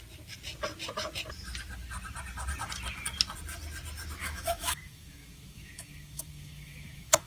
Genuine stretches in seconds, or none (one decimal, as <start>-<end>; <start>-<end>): 0.0-4.2